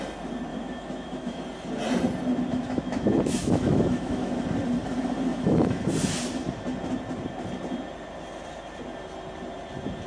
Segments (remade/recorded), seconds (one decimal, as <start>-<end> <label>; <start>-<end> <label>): 0.0-0.5 recorded; 0.5-1.4 remade; 1.4-2.5 recorded; 2.5-4.3 remade; 4.3-5.3 recorded; 5.3-5.9 remade; 5.9-10.1 recorded